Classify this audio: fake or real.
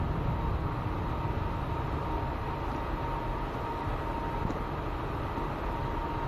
real